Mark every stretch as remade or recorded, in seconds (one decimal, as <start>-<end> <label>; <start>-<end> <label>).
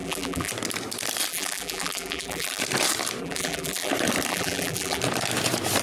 0.0-0.5 remade; 0.5-1.3 recorded; 1.3-2.6 remade; 2.6-3.2 recorded; 3.2-3.9 remade; 3.9-4.3 recorded; 4.3-5.0 remade; 5.0-5.8 recorded